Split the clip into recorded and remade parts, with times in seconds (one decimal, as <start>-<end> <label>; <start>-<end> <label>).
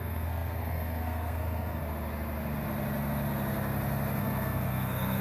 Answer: 0.0-1.8 remade; 1.8-4.2 recorded; 4.2-5.2 remade